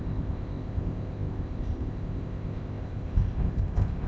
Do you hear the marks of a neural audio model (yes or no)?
yes